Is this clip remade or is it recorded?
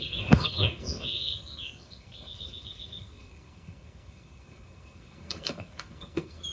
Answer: remade